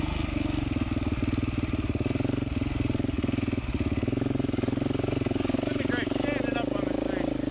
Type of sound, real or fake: real